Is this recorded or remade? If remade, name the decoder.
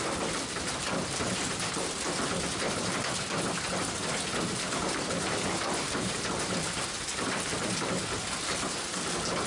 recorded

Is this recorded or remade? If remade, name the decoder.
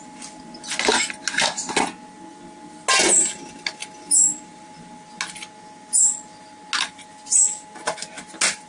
recorded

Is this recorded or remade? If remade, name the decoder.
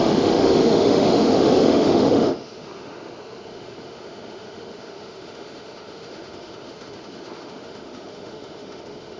remade, autoencoder, DAC-VAE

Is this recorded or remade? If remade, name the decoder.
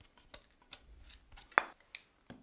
recorded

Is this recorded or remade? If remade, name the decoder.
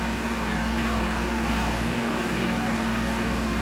remade, codec, DAC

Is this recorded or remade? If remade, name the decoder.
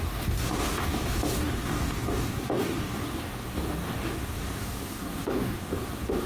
remade, codec, DAC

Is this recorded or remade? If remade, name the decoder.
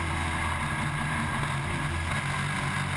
recorded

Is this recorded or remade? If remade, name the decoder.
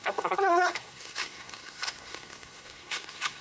remade, codec, SNAC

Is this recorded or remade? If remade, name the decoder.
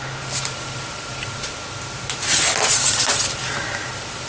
recorded